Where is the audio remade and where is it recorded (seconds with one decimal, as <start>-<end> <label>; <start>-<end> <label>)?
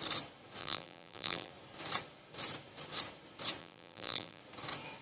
0.0-0.6 recorded; 0.6-1.5 remade; 1.5-3.6 recorded; 3.6-4.4 remade; 4.4-5.0 recorded